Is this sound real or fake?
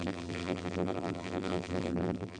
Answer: fake